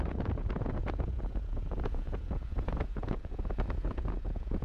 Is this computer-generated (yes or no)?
yes